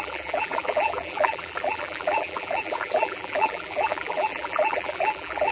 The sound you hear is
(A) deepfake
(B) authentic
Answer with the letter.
A